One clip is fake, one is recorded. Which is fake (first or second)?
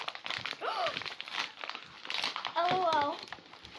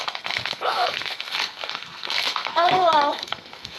second